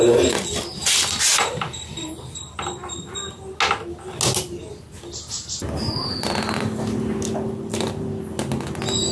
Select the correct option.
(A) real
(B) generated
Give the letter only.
A